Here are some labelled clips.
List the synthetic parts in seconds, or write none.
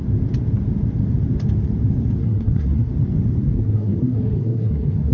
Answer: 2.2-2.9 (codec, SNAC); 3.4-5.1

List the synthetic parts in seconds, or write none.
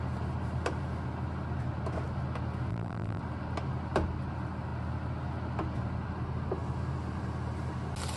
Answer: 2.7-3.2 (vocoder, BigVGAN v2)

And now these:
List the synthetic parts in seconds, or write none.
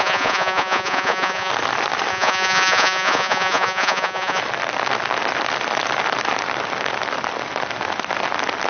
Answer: 0.0-1.5 (vocoder, Vocos); 2.1-4.4